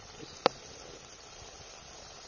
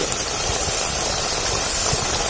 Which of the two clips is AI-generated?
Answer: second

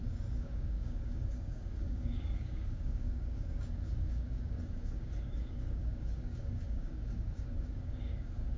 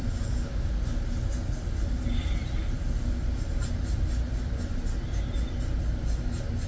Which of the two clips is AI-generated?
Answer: first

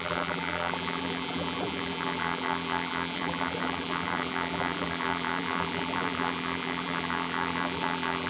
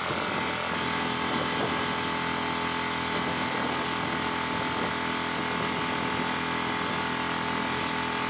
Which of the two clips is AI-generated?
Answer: first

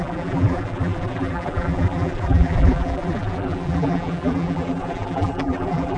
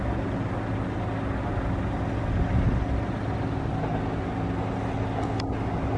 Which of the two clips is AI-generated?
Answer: first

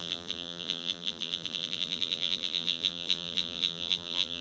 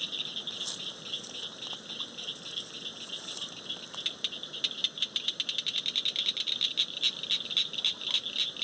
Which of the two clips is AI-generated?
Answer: first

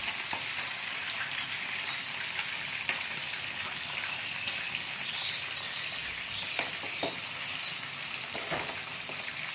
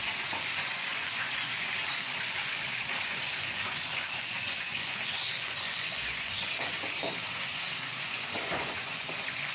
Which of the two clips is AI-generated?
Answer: second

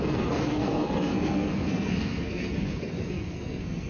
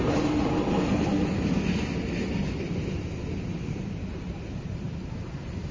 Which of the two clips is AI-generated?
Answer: first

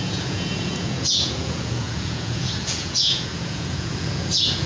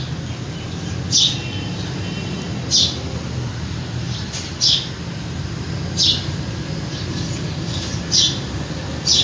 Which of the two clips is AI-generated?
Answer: first